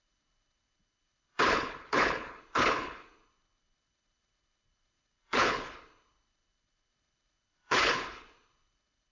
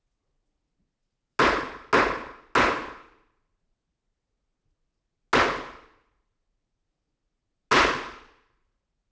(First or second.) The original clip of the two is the second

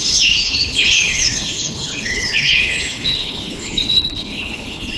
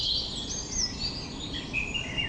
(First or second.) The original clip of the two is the second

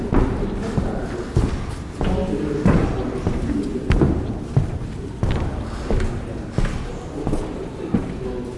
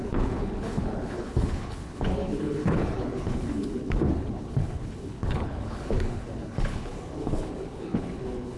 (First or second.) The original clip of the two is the first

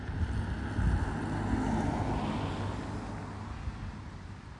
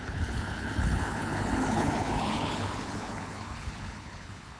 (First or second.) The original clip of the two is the first